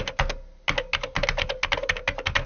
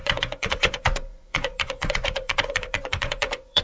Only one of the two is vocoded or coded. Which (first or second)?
second